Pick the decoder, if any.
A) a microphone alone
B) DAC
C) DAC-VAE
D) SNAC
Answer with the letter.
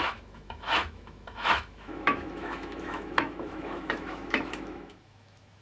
C